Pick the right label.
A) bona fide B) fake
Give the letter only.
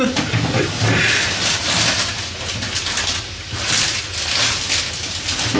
A